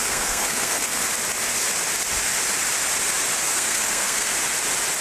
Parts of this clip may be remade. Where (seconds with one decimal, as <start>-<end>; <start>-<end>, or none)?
0.0-1.0; 3.4-4.3